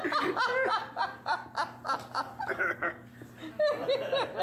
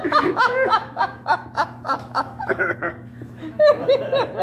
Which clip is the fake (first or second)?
second